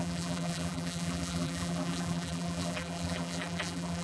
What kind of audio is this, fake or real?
fake